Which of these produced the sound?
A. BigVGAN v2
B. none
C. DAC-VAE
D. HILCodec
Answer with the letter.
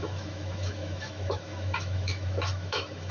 C